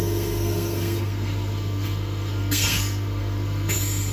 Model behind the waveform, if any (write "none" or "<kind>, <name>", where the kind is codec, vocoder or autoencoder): codec, SNAC